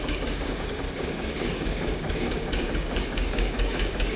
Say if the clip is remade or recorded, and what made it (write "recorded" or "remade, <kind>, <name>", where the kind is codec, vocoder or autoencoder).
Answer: remade, codec, DAC